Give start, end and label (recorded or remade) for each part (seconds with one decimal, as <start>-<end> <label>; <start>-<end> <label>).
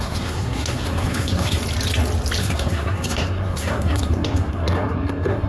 0.0-1.6 remade; 1.6-2.4 recorded; 2.4-5.5 remade